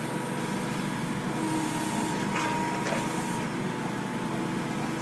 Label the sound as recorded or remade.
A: recorded